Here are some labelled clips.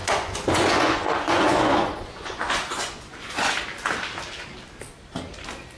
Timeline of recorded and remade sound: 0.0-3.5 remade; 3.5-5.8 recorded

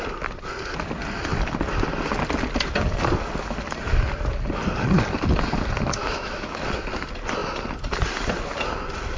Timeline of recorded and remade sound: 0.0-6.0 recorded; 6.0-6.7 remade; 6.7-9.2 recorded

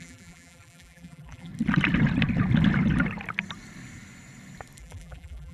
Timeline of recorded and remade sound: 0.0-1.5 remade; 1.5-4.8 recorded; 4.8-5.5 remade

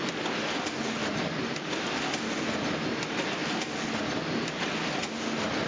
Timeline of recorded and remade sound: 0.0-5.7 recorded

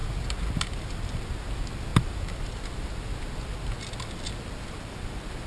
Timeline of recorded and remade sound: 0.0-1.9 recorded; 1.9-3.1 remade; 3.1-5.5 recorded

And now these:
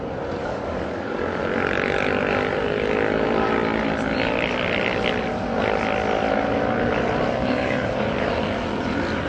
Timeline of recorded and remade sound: 0.0-0.4 recorded; 0.4-1.4 remade; 1.4-7.4 recorded; 7.4-8.3 remade; 8.3-9.3 recorded